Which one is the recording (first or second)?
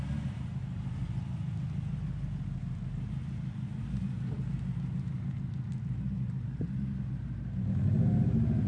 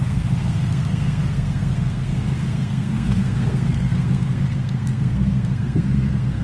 first